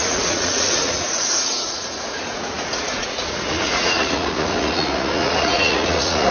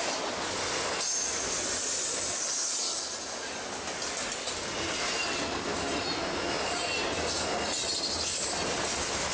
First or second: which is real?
second